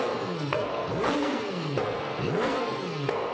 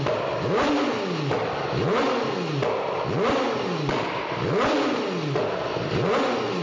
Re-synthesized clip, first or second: first